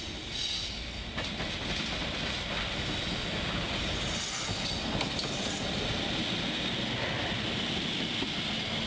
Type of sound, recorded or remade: recorded